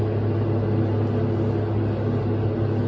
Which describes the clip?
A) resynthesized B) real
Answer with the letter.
B